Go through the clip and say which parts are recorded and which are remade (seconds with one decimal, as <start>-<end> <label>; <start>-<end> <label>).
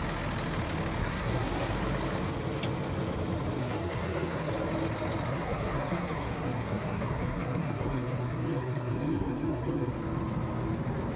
0.0-1.0 recorded; 1.0-1.7 remade; 1.7-3.6 recorded; 3.6-4.5 remade; 4.5-5.3 recorded; 5.3-9.9 remade; 9.9-11.2 recorded